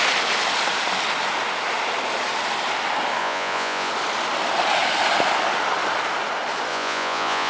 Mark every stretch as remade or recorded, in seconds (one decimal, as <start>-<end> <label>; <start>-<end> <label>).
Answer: 0.0-3.2 recorded; 3.2-3.9 remade; 3.9-6.7 recorded; 6.7-7.5 remade